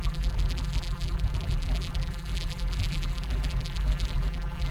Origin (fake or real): fake